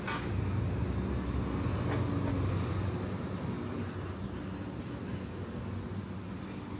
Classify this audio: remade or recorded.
recorded